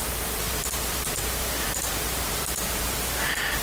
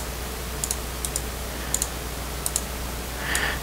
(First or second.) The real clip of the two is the second